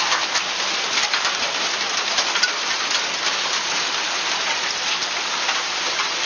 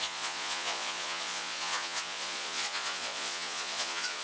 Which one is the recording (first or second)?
first